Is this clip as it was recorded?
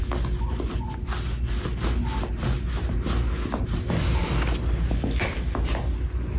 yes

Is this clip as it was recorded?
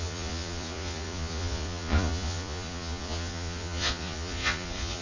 no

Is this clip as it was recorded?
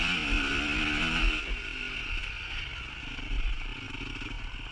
yes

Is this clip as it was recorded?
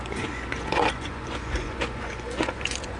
no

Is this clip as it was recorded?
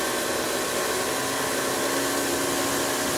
yes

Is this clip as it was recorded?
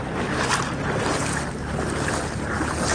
yes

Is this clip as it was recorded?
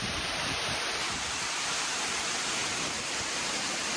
no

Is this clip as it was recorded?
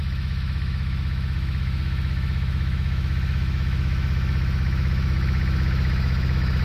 no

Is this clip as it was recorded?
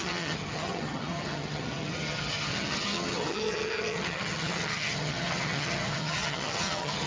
no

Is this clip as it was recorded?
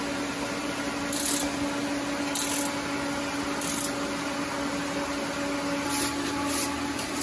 yes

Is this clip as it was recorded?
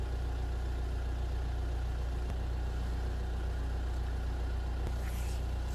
yes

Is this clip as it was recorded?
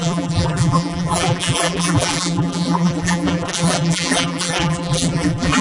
no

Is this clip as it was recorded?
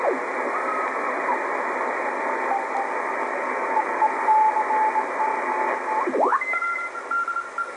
yes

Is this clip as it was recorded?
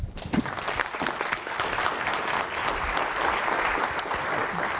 yes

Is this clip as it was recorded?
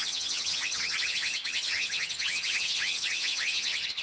no